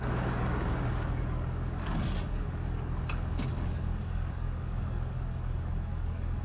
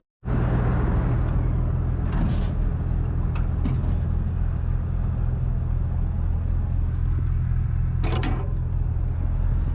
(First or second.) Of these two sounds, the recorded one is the second